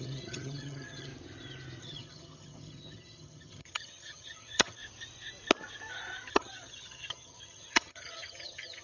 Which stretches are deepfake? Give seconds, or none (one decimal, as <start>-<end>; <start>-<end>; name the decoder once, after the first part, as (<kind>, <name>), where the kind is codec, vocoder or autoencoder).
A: 0.0-1.1 (vocoder, HiFi-GAN); 1.8-4.8; 6.3-8.8

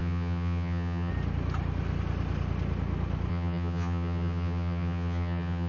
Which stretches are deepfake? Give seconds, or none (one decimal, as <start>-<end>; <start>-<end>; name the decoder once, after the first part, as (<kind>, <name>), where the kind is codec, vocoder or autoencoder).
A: 0.0-1.1 (vocoder, HiFi-GAN); 3.3-5.7

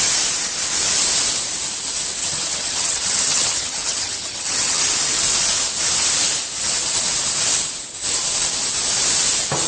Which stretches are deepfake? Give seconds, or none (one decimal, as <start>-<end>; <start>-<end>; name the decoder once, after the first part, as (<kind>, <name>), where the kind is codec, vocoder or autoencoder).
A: 2.2-4.8 (vocoder, HiFi-GAN)

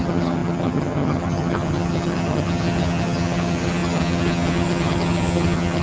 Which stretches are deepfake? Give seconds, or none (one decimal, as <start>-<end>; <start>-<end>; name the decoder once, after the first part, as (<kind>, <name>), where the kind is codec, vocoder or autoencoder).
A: 0.0-5.8 (vocoder, HiFi-GAN)

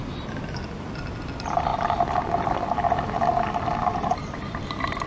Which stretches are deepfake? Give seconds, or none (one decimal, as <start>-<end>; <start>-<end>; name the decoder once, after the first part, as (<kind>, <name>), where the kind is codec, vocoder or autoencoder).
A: none